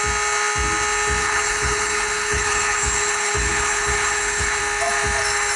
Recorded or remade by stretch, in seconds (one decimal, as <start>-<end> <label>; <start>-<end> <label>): 0.0-1.2 recorded; 1.2-4.6 remade; 4.6-5.6 recorded